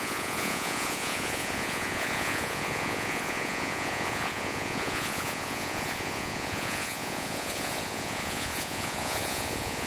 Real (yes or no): no